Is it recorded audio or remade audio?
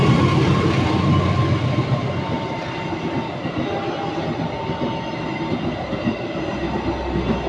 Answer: recorded